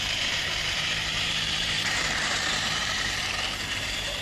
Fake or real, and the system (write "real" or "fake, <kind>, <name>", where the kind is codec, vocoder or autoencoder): fake, vocoder, BigVGAN v2